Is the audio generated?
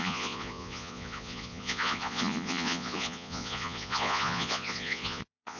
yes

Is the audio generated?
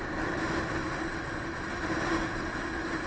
no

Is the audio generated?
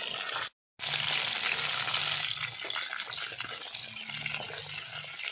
no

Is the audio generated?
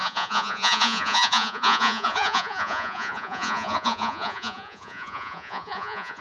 yes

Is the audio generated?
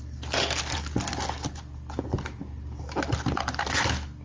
no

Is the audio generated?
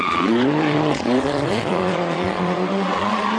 yes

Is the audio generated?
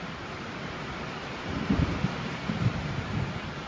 no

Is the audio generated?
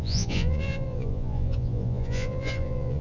yes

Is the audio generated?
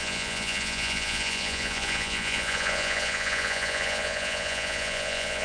yes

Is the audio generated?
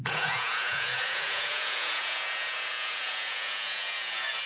yes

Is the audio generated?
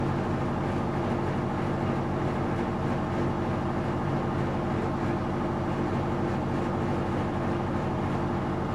no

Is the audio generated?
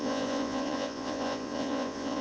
yes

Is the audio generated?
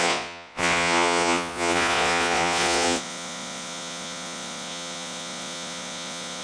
yes